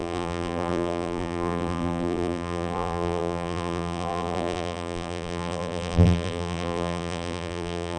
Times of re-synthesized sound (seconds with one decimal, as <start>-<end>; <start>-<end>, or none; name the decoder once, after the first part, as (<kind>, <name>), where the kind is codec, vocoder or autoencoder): 0.0-8.0 (vocoder, BigVGAN v2)